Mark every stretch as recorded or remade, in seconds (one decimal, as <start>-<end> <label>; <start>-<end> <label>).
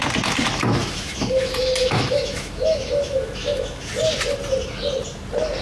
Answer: 0.0-0.8 recorded; 0.8-3.9 remade; 3.9-5.6 recorded